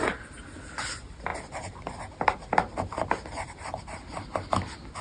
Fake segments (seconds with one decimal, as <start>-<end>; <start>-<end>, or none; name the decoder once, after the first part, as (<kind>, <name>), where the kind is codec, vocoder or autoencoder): none